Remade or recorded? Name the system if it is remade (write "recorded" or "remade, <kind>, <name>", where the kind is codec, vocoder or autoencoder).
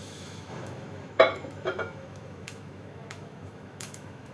remade, autoencoder, DAC-VAE